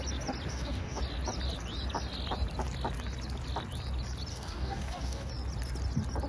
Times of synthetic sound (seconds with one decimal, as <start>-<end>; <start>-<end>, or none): 0.5-1.0; 4.3-5.3